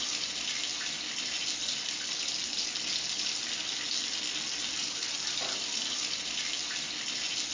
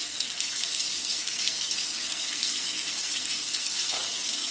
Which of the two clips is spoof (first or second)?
second